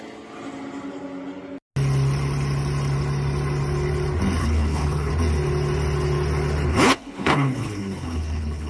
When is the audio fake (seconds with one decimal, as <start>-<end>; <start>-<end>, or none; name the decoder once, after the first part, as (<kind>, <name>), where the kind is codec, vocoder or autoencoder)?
4.4-5.1 (codec, HILCodec); 6.7-8.7